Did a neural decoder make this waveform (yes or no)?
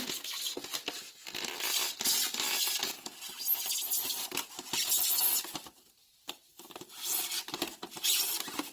no